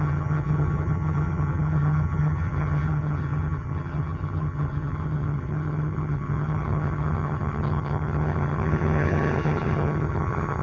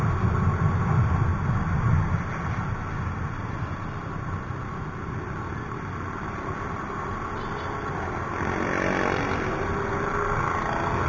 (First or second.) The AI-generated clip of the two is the first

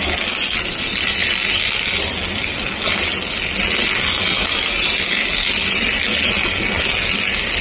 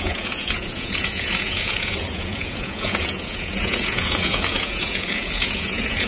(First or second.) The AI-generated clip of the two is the second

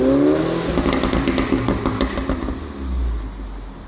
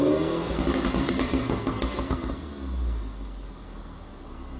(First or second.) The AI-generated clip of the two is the second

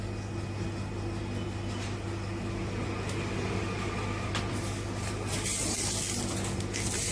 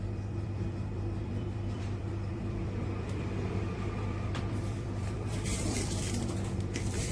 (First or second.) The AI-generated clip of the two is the second